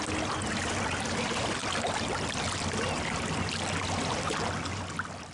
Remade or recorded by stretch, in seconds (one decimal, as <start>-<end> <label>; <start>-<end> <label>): 0.0-5.3 recorded